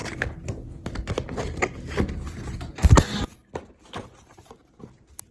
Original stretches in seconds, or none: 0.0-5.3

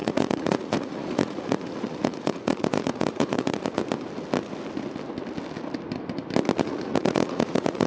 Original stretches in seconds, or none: 3.8-6.6

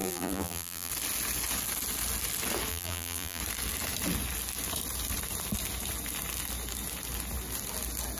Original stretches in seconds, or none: 0.9-2.7; 3.4-8.2

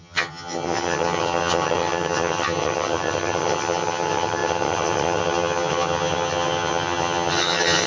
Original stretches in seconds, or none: none

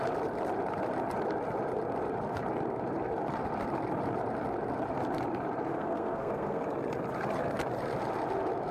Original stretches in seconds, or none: 0.0-5.7; 6.6-8.7

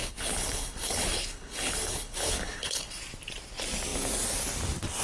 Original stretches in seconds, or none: 3.0-5.0